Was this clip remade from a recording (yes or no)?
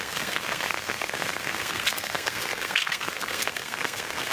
yes